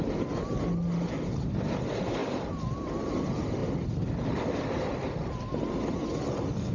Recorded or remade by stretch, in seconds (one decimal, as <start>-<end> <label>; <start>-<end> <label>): 0.0-2.2 recorded; 2.2-3.1 remade; 3.1-3.6 recorded; 3.6-5.3 remade; 5.3-6.7 recorded